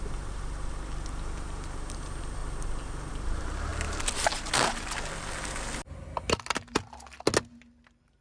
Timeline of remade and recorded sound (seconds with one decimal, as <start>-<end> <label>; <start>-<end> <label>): 0.0-8.2 recorded

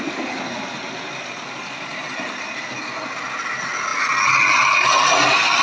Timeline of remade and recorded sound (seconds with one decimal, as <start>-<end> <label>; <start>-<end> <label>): 0.0-5.6 recorded

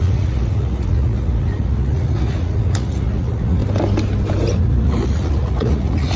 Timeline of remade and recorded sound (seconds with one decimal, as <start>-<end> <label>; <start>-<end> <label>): 0.0-3.6 remade; 3.6-4.6 recorded; 4.6-6.2 remade

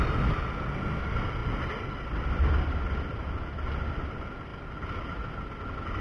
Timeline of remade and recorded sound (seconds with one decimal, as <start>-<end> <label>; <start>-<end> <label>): 0.0-6.0 recorded

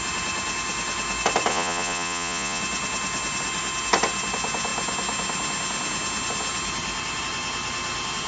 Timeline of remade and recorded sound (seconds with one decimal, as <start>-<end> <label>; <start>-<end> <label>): 0.0-1.5 recorded; 1.5-2.6 remade; 2.6-8.3 recorded

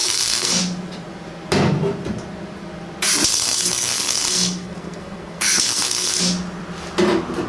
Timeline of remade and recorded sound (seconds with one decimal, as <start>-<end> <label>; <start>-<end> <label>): 0.0-0.6 remade; 0.6-3.3 recorded; 3.3-6.2 remade; 6.2-7.5 recorded

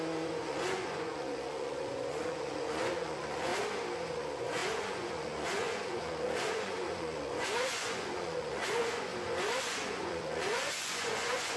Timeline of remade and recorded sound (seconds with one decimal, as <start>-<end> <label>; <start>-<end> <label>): 0.0-3.5 remade; 3.5-4.1 recorded; 4.1-9.1 remade; 9.1-9.6 recorded; 9.6-11.6 remade

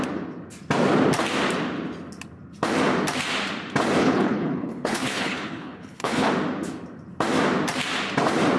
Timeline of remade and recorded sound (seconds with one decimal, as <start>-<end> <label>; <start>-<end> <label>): 0.0-4.0 recorded; 4.0-6.3 remade; 6.3-8.6 recorded